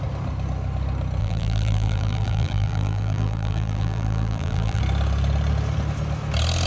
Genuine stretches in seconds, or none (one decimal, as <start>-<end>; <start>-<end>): 0.0-1.2; 4.8-6.7